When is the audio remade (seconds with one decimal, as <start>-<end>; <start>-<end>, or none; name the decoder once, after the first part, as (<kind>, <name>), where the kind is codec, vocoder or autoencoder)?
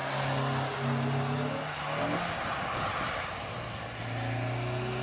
2.5-3.3 (vocoder, BigVGAN v2)